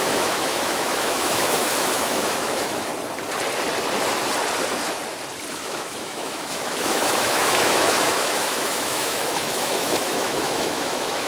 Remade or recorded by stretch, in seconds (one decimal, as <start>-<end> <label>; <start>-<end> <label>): 0.0-2.9 remade; 2.9-5.5 recorded; 5.5-11.3 remade